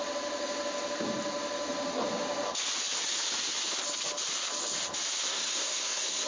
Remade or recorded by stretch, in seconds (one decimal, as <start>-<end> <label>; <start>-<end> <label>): 0.0-5.3 recorded; 5.3-6.3 remade